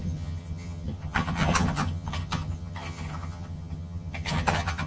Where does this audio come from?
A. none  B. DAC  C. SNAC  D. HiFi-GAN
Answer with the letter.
D